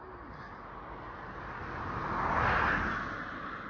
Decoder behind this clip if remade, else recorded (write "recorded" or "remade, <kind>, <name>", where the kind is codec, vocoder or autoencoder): recorded